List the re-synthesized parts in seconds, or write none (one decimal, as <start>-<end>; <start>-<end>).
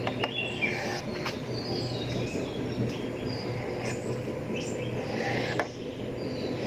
none